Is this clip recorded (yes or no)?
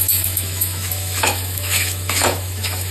no